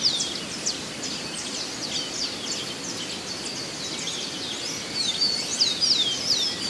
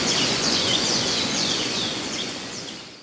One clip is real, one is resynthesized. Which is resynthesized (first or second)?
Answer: second